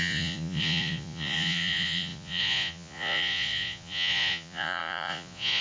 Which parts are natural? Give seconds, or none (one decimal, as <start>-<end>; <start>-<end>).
none